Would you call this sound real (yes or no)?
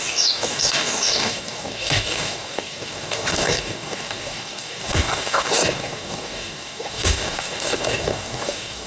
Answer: no